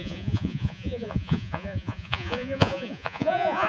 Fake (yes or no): yes